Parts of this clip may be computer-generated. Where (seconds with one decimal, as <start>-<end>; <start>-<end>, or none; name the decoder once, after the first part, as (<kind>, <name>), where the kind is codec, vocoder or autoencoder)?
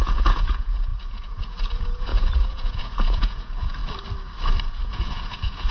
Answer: 0.0-3.8 (vocoder, Vocos); 4.8-5.7